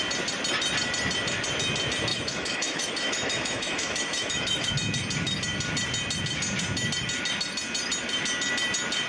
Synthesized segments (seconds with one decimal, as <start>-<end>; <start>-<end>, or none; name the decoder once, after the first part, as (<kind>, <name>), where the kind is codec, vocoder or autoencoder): 2.1-4.7 (autoencoder, DAC-VAE)